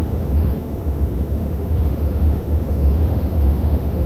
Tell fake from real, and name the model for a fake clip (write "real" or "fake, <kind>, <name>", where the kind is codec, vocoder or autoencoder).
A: fake, autoencoder, DAC-VAE